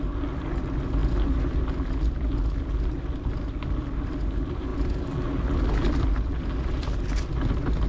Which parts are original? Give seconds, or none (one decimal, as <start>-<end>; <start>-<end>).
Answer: 0.0-7.9